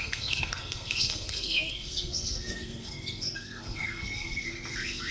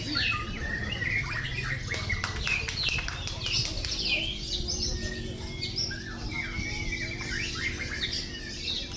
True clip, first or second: second